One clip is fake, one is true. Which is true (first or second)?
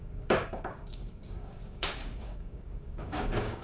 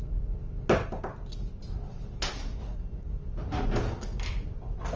second